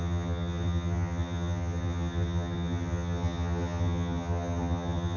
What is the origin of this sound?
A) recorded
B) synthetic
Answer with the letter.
B